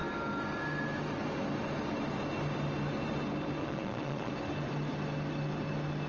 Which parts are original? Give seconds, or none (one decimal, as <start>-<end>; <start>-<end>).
0.0-3.6; 4.3-6.1